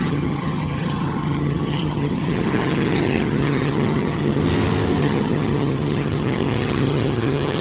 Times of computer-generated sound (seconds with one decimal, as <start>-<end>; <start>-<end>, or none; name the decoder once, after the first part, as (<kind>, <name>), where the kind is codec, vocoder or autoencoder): 0.0-4.4 (vocoder, HiFi-GAN); 5.0-7.6